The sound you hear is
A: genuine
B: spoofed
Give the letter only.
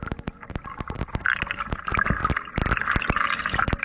A